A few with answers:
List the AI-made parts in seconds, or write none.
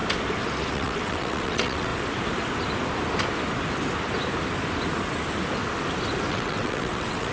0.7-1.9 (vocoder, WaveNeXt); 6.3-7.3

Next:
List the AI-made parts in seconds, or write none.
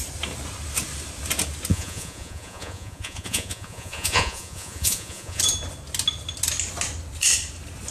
1.7-5.4 (vocoder, Vocos)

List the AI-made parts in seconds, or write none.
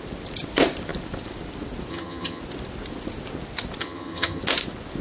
1.9-2.4 (vocoder, HiFi-GAN); 3.8-4.4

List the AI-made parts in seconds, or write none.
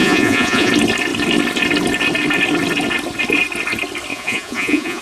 0.0-0.7 (vocoder, Vocos); 4.1-5.0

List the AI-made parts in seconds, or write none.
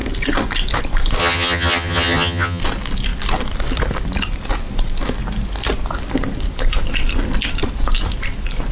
1.2-2.6 (vocoder, HiFi-GAN)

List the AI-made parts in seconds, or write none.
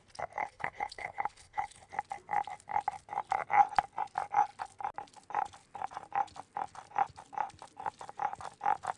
0.4-1.9 (codec, HILCodec)